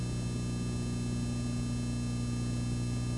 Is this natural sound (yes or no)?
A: yes